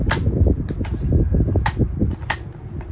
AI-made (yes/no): no